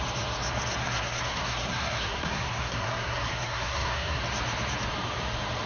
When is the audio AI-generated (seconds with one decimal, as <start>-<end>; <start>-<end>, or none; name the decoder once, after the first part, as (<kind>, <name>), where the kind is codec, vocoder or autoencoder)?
0.8-4.2 (codec, SNAC)